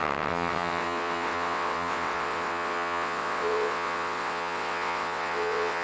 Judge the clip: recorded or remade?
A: remade